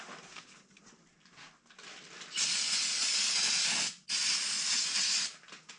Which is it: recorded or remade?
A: recorded